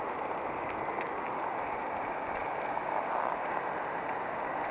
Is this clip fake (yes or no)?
no